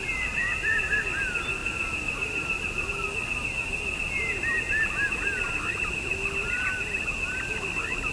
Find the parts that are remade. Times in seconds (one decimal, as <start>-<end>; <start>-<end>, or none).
1.6-2.9